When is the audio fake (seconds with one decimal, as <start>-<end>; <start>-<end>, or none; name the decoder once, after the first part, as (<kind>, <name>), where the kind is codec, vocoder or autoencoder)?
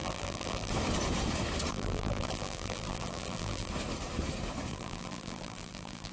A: 0.0-0.7 (vocoder, BigVGAN v2); 1.7-3.7; 4.7-6.1